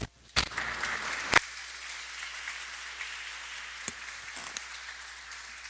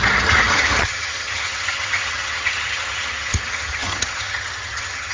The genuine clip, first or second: first